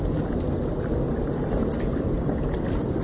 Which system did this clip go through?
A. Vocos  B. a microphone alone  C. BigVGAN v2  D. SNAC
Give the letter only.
B